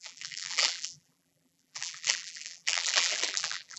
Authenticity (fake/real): fake